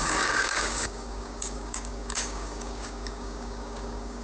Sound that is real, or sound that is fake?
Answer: fake